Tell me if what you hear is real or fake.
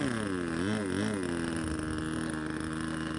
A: real